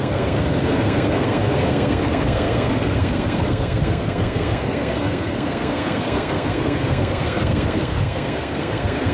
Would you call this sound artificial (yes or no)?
yes